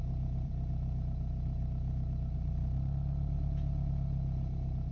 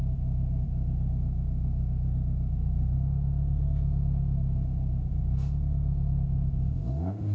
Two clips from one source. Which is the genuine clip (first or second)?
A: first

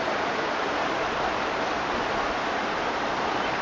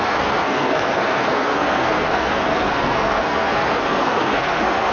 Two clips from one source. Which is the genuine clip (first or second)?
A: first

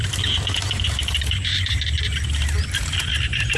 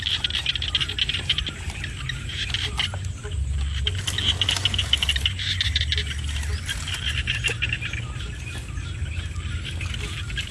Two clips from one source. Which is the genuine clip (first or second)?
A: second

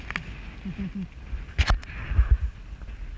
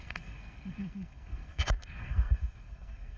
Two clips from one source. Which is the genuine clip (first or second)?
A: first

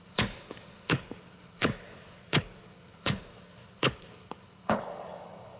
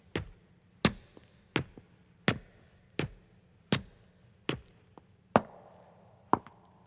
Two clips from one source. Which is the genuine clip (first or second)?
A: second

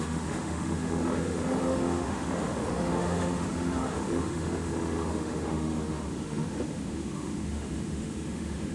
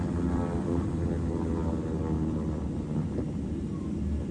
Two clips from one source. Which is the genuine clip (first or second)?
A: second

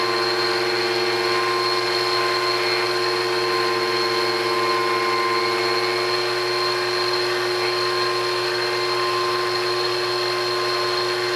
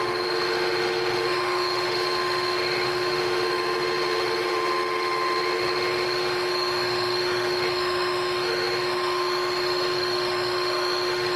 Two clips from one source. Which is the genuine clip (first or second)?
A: first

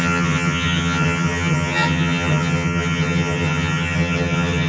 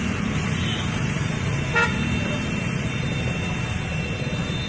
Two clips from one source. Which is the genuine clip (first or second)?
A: second